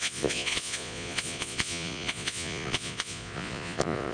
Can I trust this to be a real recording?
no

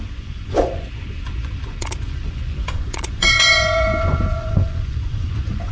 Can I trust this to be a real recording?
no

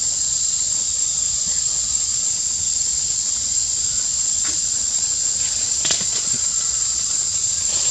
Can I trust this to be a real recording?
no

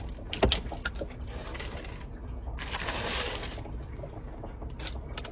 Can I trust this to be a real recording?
yes